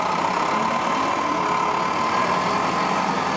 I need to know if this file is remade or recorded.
recorded